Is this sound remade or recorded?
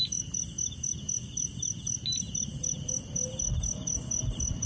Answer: recorded